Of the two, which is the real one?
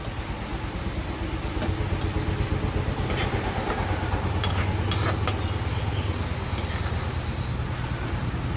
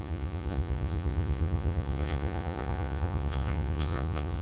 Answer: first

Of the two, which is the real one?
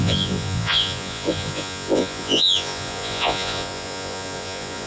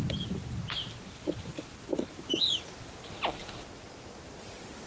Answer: second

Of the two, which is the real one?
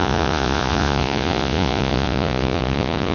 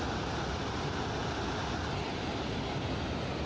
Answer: second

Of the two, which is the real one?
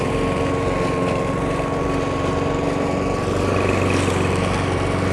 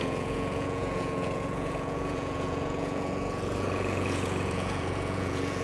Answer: first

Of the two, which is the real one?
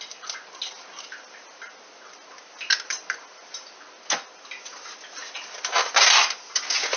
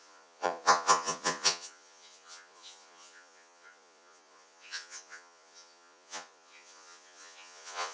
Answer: first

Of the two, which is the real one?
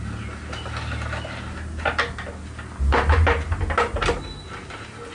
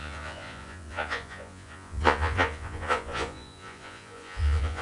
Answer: first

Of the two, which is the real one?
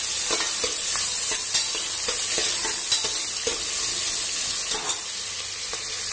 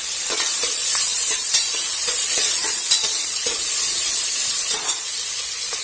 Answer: first